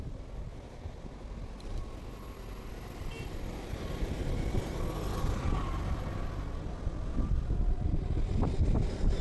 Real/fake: real